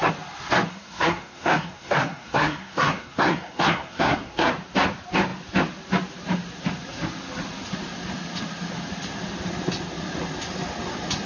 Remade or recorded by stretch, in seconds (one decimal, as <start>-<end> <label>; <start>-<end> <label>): 0.0-0.7 recorded; 0.7-4.5 remade; 4.5-11.3 recorded